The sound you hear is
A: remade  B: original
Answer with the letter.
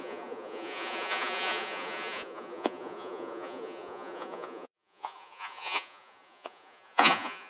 A